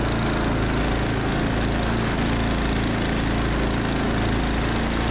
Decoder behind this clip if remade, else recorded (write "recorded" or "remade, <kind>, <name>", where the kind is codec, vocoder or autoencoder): recorded